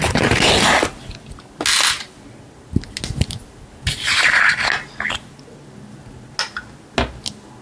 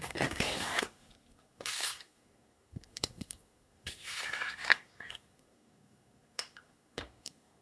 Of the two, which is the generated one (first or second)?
second